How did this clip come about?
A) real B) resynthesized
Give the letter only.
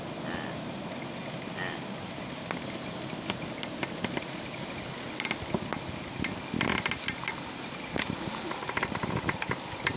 A